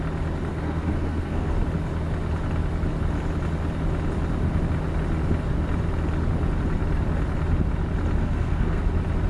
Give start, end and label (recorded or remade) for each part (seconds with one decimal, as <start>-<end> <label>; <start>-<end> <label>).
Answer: 0.0-0.5 recorded; 0.5-1.5 remade; 1.5-8.2 recorded; 8.2-8.8 remade; 8.8-9.3 recorded